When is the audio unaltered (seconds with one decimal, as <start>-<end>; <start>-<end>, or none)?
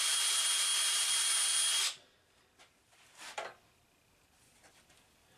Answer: 0.0-5.4